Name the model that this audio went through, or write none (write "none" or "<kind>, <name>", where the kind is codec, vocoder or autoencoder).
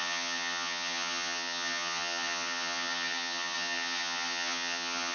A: vocoder, HiFi-GAN